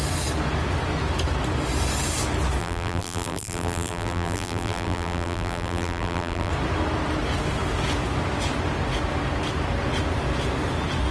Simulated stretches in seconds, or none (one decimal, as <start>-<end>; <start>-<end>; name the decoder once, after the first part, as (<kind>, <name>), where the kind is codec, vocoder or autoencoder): 2.6-6.5 (vocoder, BigVGAN v2)